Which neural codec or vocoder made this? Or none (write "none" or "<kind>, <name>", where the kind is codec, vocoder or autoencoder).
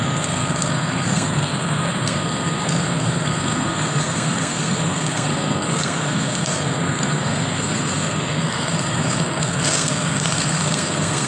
codec, SNAC